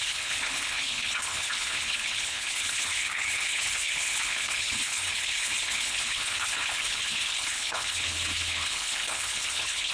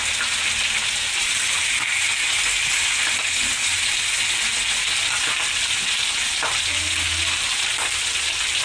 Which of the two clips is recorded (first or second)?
second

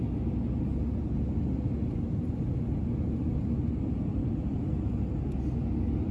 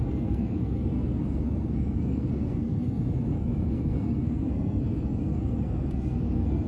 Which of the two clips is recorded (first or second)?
first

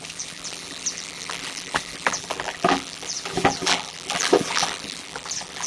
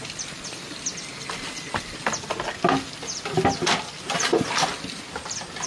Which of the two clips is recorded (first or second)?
second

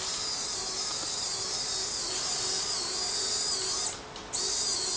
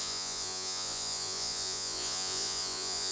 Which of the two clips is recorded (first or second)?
first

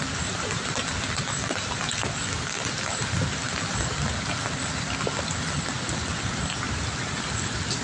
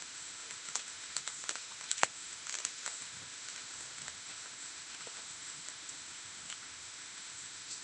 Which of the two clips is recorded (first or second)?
first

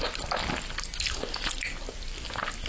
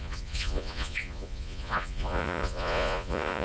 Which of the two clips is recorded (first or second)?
first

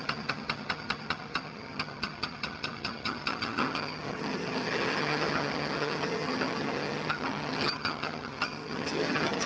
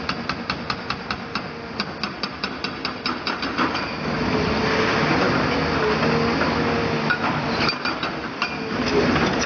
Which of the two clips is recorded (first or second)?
second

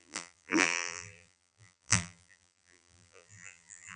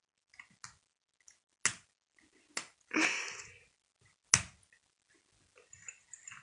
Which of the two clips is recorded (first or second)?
second